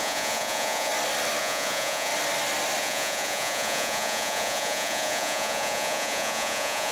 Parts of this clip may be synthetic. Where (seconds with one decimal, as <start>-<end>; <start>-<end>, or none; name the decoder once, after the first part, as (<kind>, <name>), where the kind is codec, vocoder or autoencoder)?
0.0-0.9 (vocoder, Vocos); 1.4-2.1; 2.8-6.9